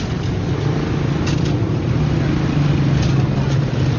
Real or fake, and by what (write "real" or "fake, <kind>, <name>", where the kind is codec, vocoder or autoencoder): real